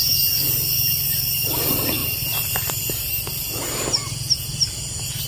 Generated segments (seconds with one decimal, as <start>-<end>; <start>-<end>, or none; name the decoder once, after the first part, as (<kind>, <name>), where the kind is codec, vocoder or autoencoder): 0.0-2.0 (vocoder, BigVGAN v2)